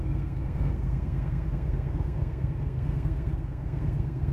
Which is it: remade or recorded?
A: remade